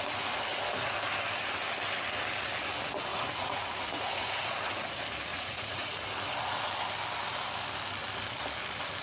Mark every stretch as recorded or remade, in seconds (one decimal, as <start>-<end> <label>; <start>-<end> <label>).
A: 0.0-3.1 recorded; 3.1-4.8 remade; 4.8-5.3 recorded; 5.3-5.9 remade; 5.9-9.0 recorded